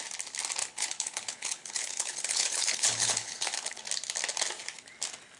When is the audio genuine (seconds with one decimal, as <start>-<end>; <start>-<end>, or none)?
0.0-0.6; 3.8-5.4

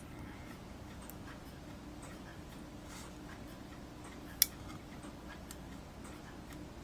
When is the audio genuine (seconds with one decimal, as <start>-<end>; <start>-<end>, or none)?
0.0-6.8

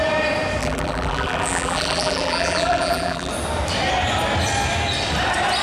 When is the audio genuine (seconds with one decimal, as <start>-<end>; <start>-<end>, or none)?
0.0-0.6; 3.3-5.6

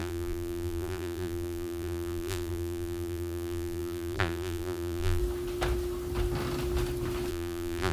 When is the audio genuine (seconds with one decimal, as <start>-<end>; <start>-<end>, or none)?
5.2-7.3